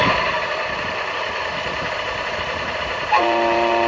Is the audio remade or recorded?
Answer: remade